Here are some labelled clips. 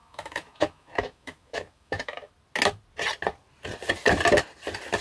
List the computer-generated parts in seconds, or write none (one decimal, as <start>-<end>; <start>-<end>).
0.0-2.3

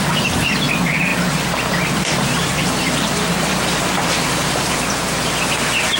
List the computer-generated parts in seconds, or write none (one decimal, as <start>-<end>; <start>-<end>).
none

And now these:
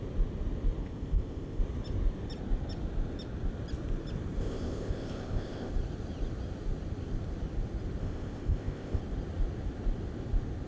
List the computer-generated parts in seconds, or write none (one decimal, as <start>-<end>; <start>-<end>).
0.8-1.6; 4.4-5.7; 8.0-9.0

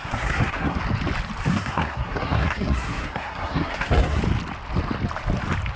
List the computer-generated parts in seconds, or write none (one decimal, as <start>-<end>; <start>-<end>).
0.0-0.8; 1.5-4.2

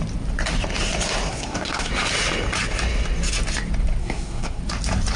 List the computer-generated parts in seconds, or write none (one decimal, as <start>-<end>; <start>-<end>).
1.3-1.9; 4.0-4.6

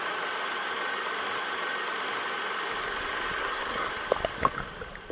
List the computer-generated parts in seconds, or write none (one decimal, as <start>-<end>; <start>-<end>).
3.4-3.9